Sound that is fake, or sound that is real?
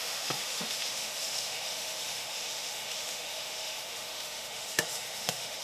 fake